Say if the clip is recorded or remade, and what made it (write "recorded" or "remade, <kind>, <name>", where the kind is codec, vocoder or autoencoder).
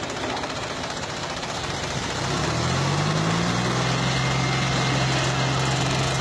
recorded